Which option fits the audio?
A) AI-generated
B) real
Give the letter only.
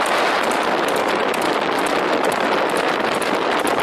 B